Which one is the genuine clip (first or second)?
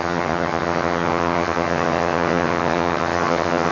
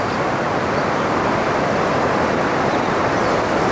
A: second